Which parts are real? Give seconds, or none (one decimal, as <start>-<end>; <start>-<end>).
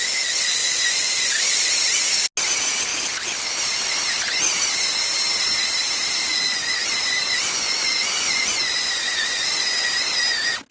0.0-0.6; 1.5-6.3; 9.9-10.7